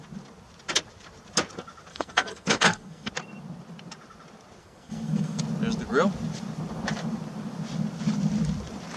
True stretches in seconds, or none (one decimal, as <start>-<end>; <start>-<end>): 0.0-1.9; 3.1-4.6; 5.4-9.0